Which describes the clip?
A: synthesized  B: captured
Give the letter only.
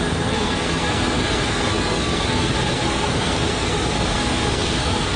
A